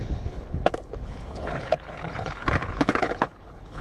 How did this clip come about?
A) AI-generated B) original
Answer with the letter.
A